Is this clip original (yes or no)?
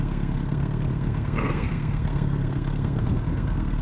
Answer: no